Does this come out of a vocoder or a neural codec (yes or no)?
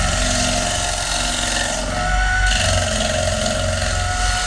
no